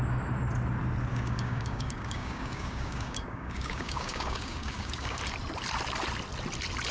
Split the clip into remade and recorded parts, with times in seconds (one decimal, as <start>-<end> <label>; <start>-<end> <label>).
0.0-1.1 recorded; 1.1-5.2 remade; 5.2-6.9 recorded